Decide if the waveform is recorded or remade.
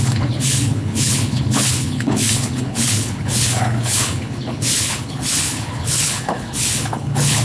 remade